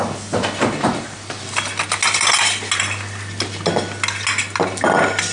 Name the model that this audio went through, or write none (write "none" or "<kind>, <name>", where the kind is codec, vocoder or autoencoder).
none